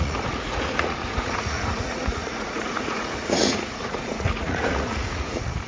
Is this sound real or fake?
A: fake